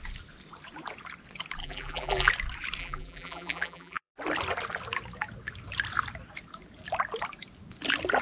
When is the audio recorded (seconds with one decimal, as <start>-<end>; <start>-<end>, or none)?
0.0-1.6; 2.3-2.8; 4.1-8.2